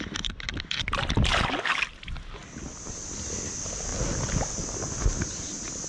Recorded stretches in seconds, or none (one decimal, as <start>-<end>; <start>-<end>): 0.0-5.9